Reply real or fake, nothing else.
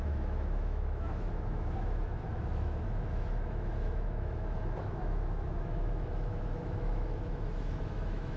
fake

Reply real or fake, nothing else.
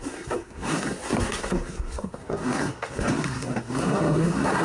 fake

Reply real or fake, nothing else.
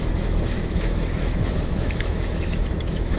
fake